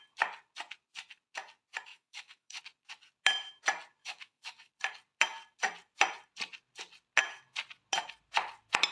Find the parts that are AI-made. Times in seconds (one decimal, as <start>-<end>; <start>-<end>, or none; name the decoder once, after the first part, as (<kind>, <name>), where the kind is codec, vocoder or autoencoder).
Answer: 1.9-2.6 (autoencoder, DAC-VAE); 4.0-4.7